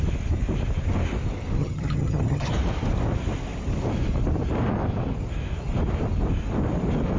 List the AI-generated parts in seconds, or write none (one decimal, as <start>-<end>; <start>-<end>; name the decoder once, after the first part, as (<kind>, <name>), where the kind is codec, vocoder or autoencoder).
1.6-2.5 (vocoder, HiFi-GAN)